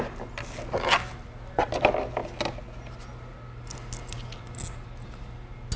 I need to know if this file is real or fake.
real